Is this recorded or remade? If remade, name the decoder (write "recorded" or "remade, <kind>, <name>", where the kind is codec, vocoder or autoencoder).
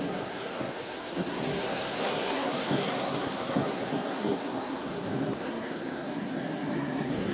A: remade, codec, SNAC